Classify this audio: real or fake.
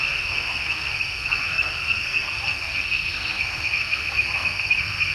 fake